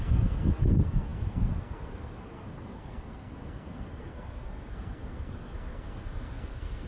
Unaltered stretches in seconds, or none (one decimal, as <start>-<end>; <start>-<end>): none